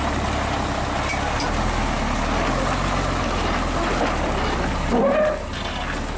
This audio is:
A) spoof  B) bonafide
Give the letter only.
B